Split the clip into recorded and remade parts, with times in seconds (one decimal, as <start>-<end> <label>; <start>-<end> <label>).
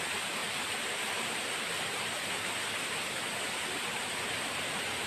0.0-0.4 recorded; 0.4-0.9 remade; 0.9-5.1 recorded